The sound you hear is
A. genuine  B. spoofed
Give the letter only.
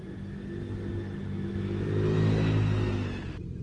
A